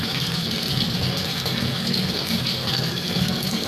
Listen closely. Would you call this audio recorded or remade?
remade